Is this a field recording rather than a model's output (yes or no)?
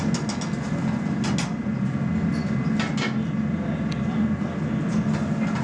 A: yes